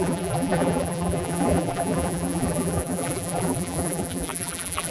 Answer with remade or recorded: remade